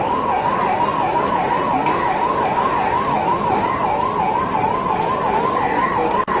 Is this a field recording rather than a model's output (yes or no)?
yes